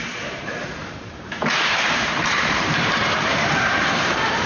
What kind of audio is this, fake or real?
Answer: fake